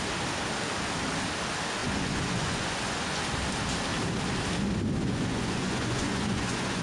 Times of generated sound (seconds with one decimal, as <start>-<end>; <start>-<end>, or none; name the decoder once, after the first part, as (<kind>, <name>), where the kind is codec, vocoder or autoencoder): 1.8-3.2 (vocoder, Vocos); 5.0-6.8